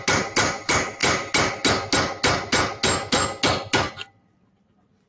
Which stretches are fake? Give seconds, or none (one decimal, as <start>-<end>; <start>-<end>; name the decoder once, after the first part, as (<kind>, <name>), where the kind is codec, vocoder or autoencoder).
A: none